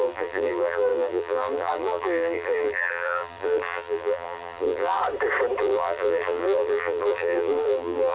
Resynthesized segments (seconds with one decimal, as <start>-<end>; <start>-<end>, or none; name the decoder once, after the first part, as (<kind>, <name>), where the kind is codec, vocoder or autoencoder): 0.0-5.0 (vocoder, BigVGAN v2); 5.6-8.1